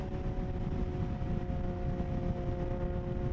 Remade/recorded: recorded